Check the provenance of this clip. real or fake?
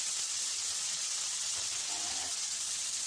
fake